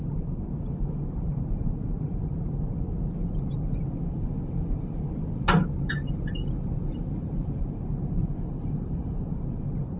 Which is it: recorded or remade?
recorded